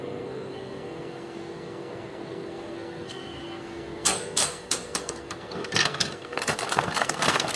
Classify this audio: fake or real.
fake